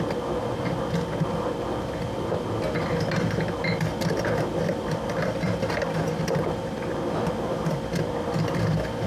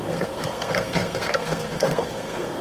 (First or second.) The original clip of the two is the first